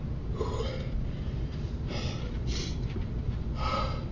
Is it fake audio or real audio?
fake